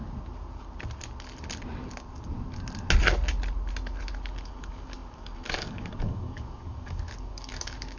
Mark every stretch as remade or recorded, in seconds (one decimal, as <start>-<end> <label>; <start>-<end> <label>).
0.0-4.3 recorded; 4.3-8.0 remade